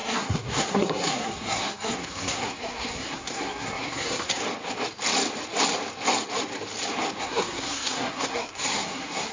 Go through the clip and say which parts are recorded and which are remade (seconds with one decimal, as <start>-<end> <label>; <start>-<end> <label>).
0.0-4.4 remade; 4.4-7.2 recorded; 7.2-9.3 remade